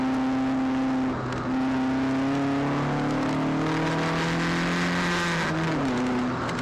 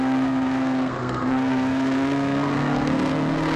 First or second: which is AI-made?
second